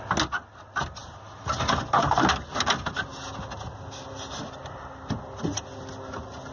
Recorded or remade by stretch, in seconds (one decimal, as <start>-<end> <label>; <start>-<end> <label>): 0.0-6.5 recorded

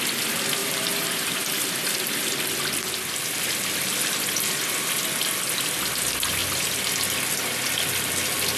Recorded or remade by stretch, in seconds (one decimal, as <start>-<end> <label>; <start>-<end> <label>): 0.0-0.6 recorded; 0.6-2.3 remade; 2.3-8.6 recorded

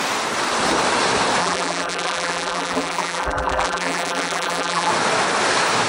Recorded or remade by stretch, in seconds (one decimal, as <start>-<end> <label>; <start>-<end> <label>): 0.0-1.4 recorded; 1.4-4.9 remade; 4.9-5.9 recorded

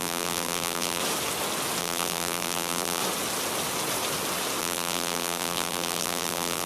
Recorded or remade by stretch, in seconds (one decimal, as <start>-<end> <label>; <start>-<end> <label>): 0.0-1.0 remade; 1.0-1.8 recorded; 1.8-3.0 remade; 3.0-4.6 recorded; 4.6-6.7 remade

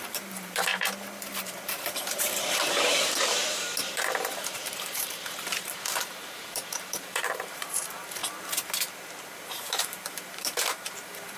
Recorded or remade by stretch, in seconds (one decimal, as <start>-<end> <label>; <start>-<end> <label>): 0.0-0.7 remade; 0.7-2.0 recorded; 2.0-8.2 remade; 8.2-9.3 recorded; 9.3-11.4 remade

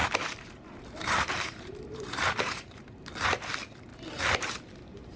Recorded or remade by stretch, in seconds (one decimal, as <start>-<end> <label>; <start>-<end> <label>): 0.0-3.1 remade; 3.1-3.9 recorded; 3.9-4.5 remade; 4.5-5.2 recorded

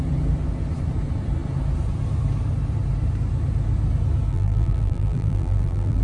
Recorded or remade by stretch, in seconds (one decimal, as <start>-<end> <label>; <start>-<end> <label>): 0.0-4.3 recorded; 4.3-6.0 remade

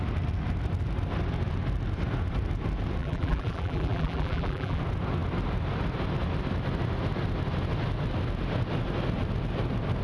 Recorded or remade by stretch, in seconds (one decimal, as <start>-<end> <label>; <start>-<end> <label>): 0.0-3.0 recorded; 3.0-4.8 remade; 4.8-10.0 recorded